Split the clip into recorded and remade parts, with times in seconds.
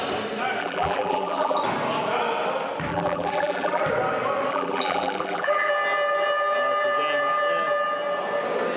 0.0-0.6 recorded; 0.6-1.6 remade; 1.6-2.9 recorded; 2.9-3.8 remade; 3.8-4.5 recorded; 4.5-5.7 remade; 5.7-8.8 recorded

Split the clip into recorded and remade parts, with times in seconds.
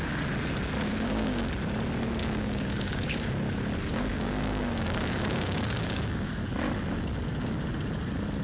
0.0-0.9 recorded; 0.9-1.5 remade; 1.5-2.2 recorded; 2.2-3.3 remade; 3.3-4.1 recorded; 4.1-6.3 remade; 6.3-8.4 recorded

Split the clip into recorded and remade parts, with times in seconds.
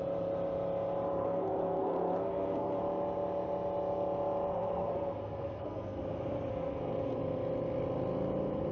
0.0-1.2 recorded; 1.2-2.8 remade; 2.8-4.5 recorded; 4.5-6.0 remade; 6.0-6.5 recorded; 6.5-7.2 remade; 7.2-8.7 recorded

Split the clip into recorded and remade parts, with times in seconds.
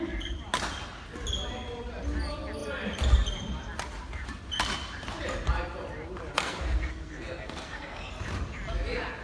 0.0-6.3 recorded; 6.3-8.1 remade; 8.1-9.2 recorded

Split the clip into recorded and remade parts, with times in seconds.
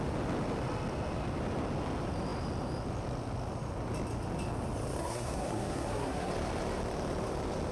0.0-5.0 recorded; 5.0-6.3 remade; 6.3-7.7 recorded